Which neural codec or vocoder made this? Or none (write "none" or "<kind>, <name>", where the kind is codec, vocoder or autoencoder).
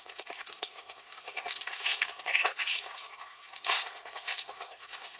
codec, SNAC